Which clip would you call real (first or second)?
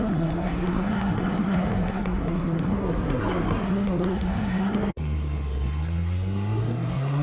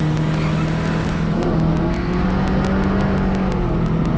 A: second